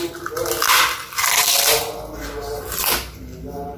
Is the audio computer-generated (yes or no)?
no